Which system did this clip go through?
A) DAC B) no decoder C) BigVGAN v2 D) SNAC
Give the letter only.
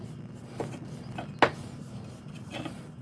B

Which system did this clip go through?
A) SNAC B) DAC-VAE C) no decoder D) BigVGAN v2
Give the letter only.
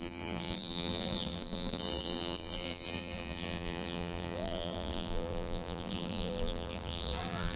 D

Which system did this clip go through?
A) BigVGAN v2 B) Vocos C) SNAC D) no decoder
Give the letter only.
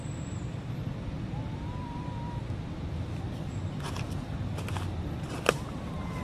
D